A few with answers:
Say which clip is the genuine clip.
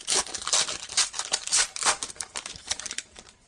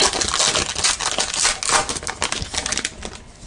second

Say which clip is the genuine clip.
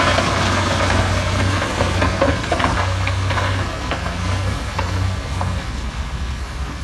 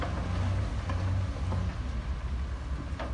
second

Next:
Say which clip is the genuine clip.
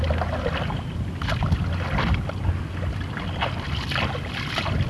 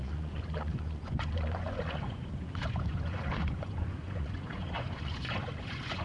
first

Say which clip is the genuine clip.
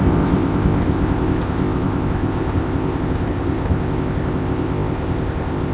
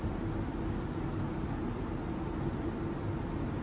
second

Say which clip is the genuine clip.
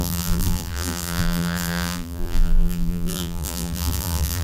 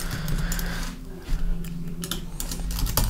second